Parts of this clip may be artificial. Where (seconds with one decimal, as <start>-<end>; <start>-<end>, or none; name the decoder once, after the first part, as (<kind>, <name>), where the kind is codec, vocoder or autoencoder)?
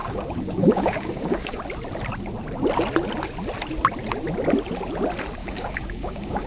0.0-1.6 (codec, DAC); 5.4-6.5